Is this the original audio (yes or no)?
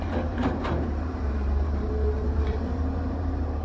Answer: no